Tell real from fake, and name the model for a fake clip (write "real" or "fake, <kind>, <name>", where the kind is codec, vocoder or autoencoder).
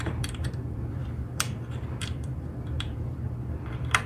fake, vocoder, BigVGAN v2